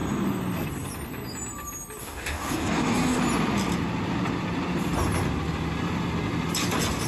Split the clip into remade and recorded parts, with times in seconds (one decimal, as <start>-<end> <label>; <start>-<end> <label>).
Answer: 0.0-2.0 recorded; 2.0-3.2 remade; 3.2-7.1 recorded